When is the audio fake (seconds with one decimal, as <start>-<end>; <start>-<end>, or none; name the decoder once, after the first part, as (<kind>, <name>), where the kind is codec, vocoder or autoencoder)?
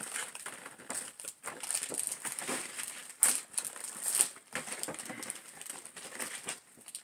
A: none